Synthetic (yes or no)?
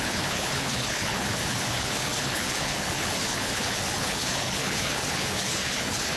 yes